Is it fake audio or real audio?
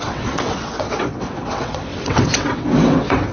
fake